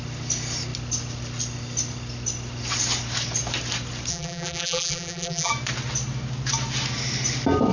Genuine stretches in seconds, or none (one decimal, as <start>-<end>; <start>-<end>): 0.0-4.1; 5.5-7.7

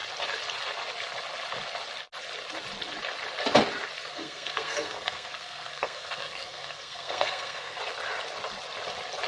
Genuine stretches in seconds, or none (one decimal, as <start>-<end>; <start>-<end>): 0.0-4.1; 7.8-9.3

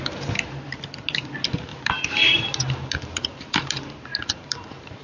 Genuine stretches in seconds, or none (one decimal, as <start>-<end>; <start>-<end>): 0.0-1.7